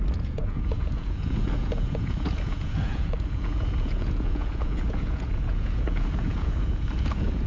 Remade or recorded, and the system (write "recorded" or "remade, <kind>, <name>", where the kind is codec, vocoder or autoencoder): remade, vocoder, Vocos